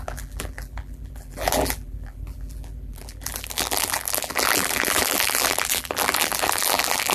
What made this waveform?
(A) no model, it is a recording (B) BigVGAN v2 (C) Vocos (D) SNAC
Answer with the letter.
B